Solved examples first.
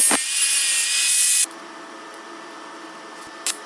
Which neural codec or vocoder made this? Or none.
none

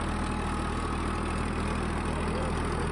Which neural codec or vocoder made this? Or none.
none